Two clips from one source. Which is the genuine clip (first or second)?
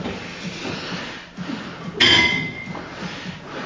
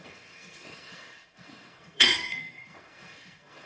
first